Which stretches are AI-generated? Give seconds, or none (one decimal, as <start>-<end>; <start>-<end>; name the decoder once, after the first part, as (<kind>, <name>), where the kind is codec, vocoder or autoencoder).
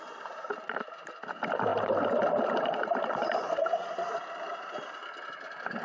none